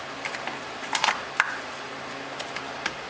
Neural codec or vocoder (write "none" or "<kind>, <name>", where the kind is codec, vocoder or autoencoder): none